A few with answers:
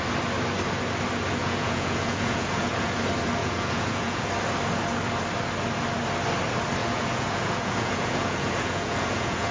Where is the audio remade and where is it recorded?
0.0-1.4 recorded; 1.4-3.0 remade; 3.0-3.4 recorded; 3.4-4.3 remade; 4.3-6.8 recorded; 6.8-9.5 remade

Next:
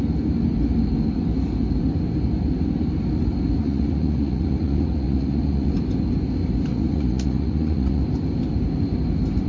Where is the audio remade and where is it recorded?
0.0-3.6 recorded; 3.6-5.7 remade; 5.7-6.7 recorded; 6.7-8.0 remade; 8.0-9.5 recorded

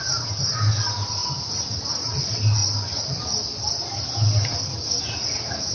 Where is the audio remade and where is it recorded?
0.0-5.7 recorded

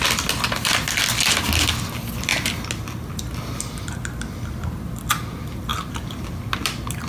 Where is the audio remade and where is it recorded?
0.0-5.7 recorded; 5.7-7.1 remade

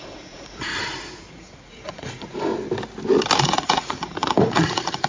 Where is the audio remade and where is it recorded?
0.0-0.7 remade; 0.7-1.3 recorded; 1.3-2.5 remade; 2.5-3.4 recorded; 3.4-5.1 remade

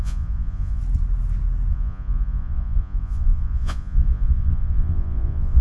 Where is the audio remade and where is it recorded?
0.0-0.8 remade; 0.8-1.7 recorded; 1.7-5.6 remade